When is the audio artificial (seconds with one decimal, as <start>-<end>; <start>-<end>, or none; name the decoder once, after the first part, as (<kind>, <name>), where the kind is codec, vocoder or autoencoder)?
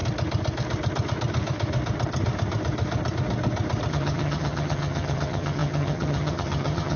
3.9-7.0 (vocoder, HiFi-GAN)